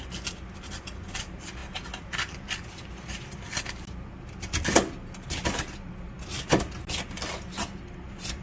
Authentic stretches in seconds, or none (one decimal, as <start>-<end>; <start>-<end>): 0.0-8.4